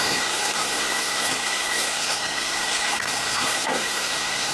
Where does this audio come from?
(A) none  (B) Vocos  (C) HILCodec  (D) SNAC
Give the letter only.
D